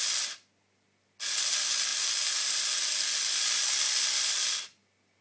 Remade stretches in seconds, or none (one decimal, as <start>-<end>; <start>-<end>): none